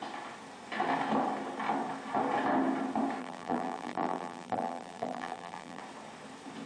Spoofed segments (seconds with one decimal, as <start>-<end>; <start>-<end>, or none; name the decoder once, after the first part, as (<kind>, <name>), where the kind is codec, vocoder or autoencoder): 3.2-5.8 (vocoder, BigVGAN v2)